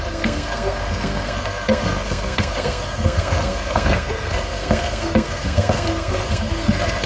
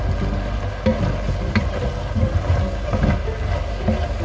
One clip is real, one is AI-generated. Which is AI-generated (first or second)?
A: first